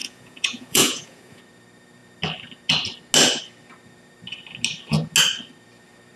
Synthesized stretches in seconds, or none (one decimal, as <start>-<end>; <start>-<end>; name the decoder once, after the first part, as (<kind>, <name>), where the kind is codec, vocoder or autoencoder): 0.0-1.4 (vocoder, Vocos)